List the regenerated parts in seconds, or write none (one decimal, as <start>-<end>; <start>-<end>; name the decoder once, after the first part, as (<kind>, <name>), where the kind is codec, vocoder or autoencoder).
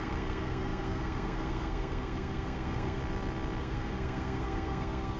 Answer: 0.0-3.0 (codec, SNAC); 3.6-5.2